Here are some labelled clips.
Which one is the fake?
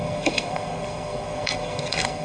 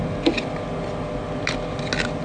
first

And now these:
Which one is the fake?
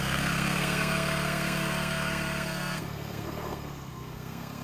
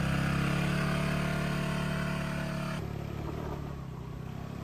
first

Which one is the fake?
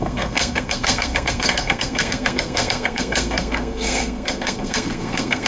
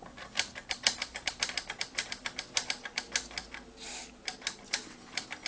first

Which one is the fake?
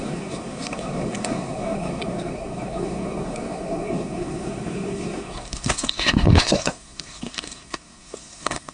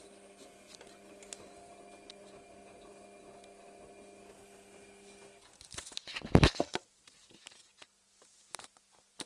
first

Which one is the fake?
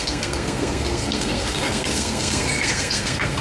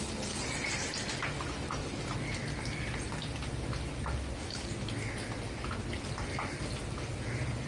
first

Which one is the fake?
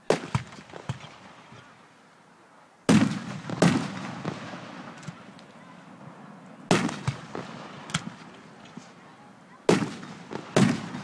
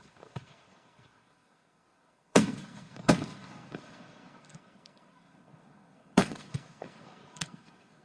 second